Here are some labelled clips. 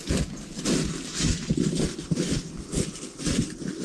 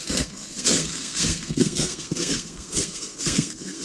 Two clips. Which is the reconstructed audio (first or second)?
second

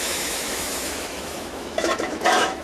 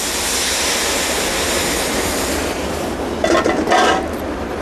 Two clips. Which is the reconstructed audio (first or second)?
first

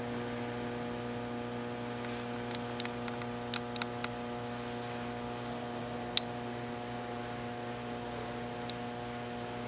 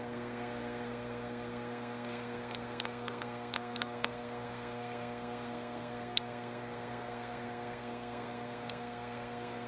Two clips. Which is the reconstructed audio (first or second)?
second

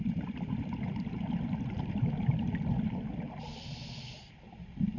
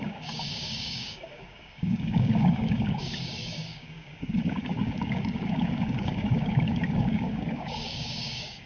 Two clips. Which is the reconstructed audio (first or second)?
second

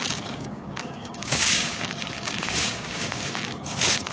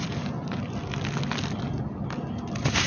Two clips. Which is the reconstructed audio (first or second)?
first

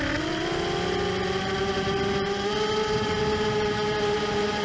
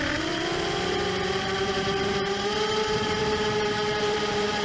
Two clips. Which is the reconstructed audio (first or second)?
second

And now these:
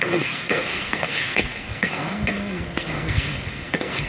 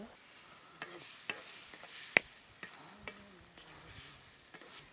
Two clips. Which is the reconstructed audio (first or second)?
first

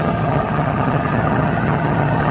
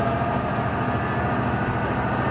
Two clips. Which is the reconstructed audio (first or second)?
first